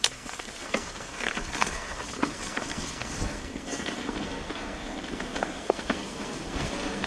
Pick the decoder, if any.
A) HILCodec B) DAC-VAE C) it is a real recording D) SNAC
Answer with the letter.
D